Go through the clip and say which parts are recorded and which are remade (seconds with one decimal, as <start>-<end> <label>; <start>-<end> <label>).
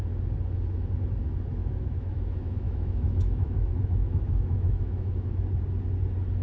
0.0-1.6 recorded; 1.6-5.4 remade; 5.4-6.4 recorded